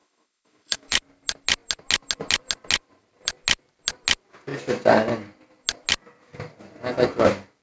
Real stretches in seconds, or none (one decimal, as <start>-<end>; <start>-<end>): 1.0-7.6